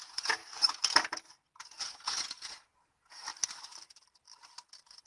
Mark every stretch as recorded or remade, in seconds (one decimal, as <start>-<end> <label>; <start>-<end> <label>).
0.0-0.4 remade; 0.4-1.8 recorded; 1.8-3.3 remade; 3.3-5.1 recorded